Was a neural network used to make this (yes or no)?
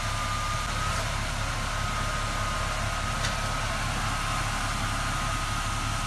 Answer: no